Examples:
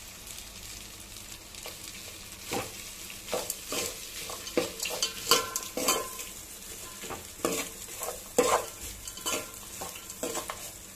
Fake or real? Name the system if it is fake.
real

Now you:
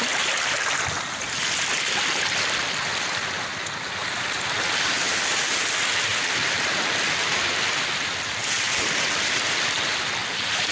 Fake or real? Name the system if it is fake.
real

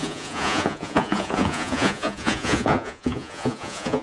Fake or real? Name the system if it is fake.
fake, vocoder, Vocos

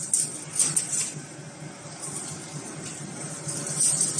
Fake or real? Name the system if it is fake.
real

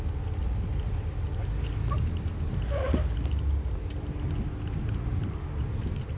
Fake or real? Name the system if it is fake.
real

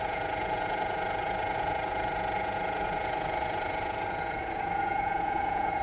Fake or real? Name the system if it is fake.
fake, vocoder, Vocos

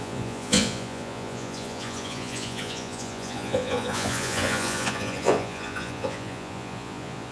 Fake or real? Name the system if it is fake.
fake, vocoder, Vocos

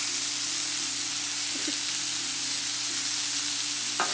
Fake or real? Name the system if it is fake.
real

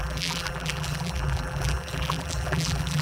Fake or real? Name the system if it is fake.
fake, vocoder, BigVGAN v2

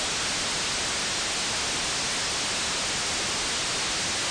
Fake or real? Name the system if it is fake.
real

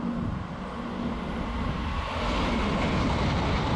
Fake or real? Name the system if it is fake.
real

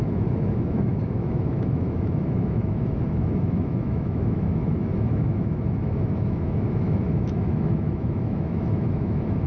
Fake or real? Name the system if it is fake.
fake, autoencoder, DAC-VAE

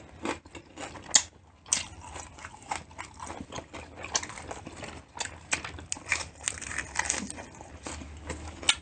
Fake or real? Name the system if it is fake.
real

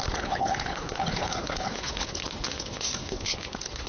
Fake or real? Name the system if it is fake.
fake, codec, HILCodec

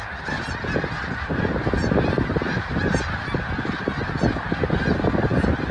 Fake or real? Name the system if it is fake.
real